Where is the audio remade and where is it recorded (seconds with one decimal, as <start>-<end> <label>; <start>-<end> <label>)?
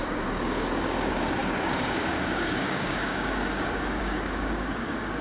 0.0-5.2 remade